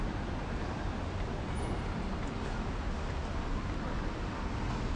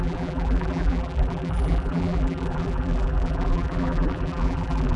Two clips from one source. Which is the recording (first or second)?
first